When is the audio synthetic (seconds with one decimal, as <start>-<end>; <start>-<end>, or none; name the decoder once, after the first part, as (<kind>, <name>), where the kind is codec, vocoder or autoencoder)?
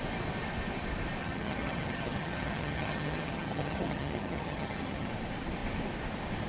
1.2-5.1 (vocoder, HiFi-GAN)